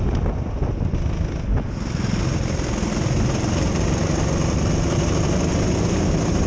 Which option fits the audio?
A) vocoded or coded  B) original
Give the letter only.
B